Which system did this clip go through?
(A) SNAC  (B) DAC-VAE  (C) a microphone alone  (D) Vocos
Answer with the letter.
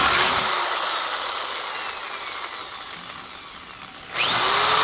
C